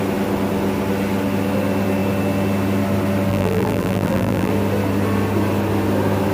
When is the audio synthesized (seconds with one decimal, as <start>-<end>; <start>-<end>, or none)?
3.3-4.5